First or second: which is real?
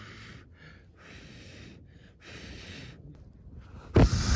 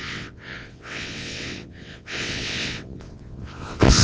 first